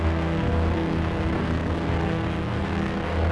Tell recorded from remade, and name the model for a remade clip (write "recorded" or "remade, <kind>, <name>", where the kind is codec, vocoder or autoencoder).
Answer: remade, codec, SNAC